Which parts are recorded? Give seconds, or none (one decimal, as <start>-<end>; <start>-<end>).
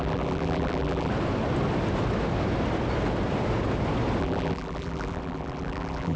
1.1-4.2